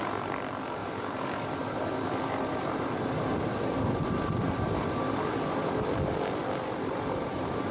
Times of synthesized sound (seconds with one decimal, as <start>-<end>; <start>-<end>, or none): 0.8-5.0; 6.4-7.7